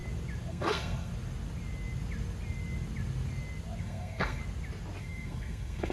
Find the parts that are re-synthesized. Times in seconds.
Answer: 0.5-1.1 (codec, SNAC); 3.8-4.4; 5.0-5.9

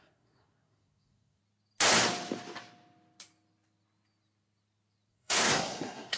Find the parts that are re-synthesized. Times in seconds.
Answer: 0.0-1.4 (codec, SNAC); 5.1-6.2